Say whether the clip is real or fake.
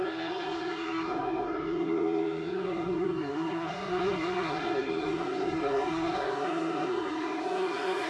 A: fake